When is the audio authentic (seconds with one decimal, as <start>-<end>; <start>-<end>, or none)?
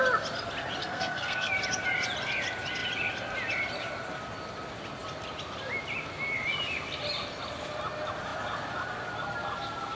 0.0-0.8; 1.5-9.9